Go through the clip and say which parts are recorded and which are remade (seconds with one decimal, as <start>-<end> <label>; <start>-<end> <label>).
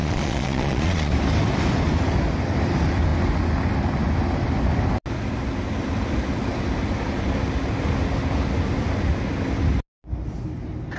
0.0-1.1 remade; 1.1-11.0 recorded